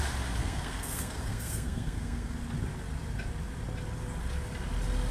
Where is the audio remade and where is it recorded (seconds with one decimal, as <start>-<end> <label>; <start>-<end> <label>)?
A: 0.0-0.4 recorded; 0.4-2.3 remade; 2.3-5.1 recorded

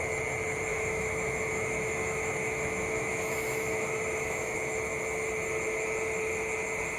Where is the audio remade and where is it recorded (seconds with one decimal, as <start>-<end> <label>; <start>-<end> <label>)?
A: 0.0-0.7 recorded; 0.7-4.9 remade; 4.9-7.0 recorded

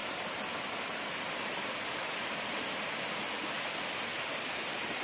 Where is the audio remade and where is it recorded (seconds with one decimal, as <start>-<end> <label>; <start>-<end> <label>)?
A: 0.0-5.0 recorded

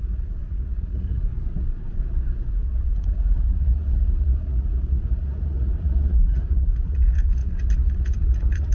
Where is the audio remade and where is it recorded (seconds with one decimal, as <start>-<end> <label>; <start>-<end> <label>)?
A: 0.0-1.3 remade; 1.3-2.5 recorded; 2.5-8.7 remade

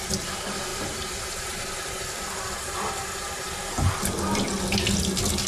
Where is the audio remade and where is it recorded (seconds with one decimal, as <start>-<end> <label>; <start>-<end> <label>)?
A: 0.0-0.7 recorded; 0.7-4.0 remade; 4.0-5.5 recorded